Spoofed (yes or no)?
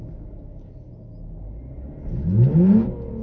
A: no